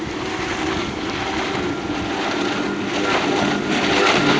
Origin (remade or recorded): recorded